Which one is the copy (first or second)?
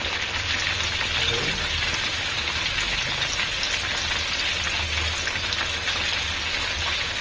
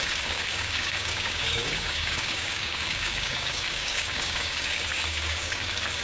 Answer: second